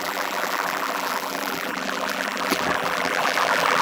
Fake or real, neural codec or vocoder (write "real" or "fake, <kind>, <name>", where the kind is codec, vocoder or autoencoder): fake, vocoder, BigVGAN v2